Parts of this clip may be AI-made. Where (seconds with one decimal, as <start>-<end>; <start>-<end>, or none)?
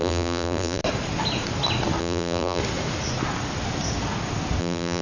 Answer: 0.0-0.8; 2.0-2.6; 4.6-5.0